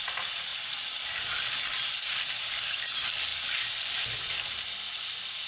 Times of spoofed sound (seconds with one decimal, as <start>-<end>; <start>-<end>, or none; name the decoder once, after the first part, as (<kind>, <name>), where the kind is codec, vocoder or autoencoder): none